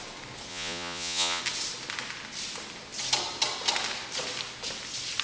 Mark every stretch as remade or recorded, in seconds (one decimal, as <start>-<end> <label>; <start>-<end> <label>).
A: 0.0-0.5 recorded; 0.5-1.4 remade; 1.4-5.2 recorded